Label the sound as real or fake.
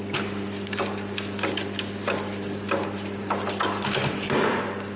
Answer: real